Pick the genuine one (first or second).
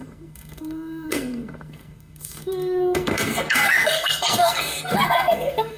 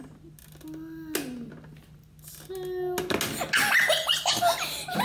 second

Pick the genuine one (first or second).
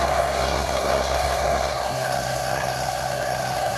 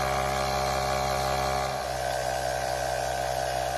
second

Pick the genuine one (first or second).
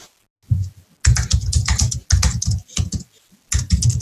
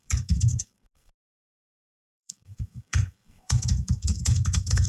first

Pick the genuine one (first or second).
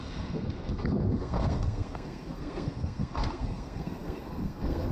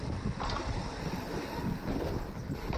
second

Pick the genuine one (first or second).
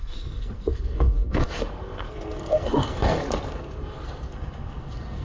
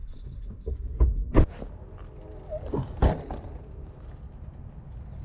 second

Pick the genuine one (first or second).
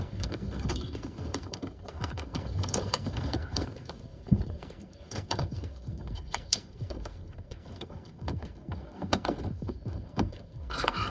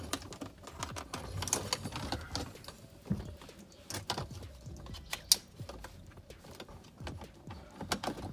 second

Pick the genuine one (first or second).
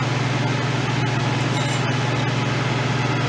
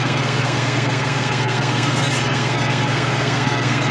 first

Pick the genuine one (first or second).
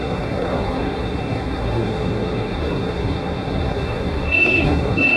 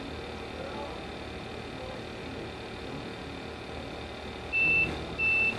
second